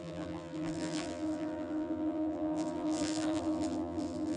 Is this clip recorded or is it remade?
remade